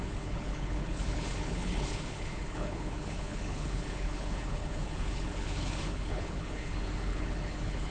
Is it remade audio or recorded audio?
remade